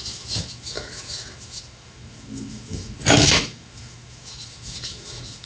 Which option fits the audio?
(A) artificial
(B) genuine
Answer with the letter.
A